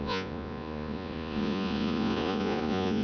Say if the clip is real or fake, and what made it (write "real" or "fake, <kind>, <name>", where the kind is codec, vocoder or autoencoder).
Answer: fake, vocoder, Vocos